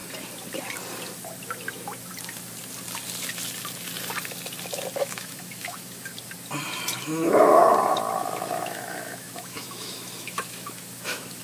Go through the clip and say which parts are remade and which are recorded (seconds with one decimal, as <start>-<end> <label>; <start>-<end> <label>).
0.0-5.0 recorded; 5.0-6.1 remade; 6.1-7.0 recorded; 7.0-7.6 remade; 7.6-8.2 recorded; 8.2-11.4 remade